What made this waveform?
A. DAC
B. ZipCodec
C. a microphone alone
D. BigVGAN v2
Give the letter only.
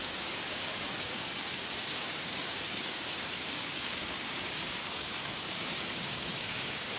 A